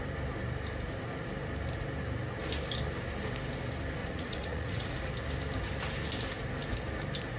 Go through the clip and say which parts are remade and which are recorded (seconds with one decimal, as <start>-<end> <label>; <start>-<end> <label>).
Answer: 0.0-4.0 recorded; 4.0-5.1 remade; 5.1-7.4 recorded